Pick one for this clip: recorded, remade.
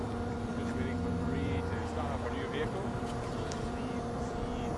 remade